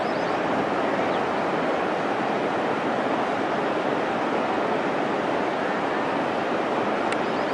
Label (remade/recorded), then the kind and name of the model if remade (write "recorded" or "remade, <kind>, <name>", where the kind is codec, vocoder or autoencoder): remade, vocoder, BigVGAN v2